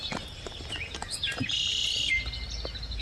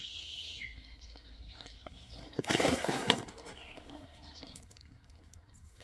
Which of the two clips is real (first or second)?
first